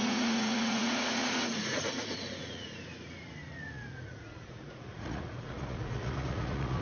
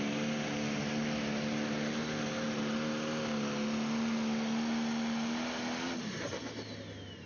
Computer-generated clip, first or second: first